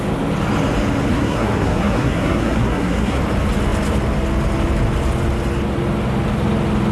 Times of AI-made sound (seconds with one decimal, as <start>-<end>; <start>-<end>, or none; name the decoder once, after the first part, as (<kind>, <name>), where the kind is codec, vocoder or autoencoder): 1.1-3.2 (codec, SNAC)